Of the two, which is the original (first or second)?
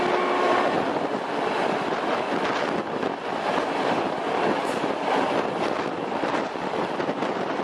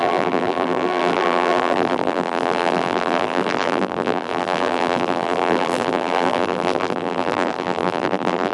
first